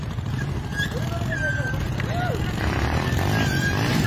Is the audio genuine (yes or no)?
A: yes